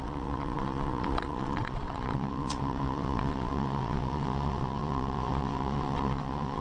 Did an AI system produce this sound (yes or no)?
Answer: yes